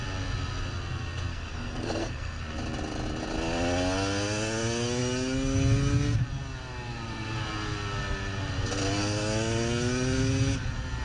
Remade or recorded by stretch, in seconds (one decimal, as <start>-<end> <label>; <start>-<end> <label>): 0.0-1.3 recorded; 1.3-2.4 remade; 2.4-11.0 recorded